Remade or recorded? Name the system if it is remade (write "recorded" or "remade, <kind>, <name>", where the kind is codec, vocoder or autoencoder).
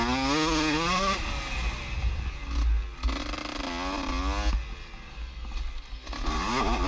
recorded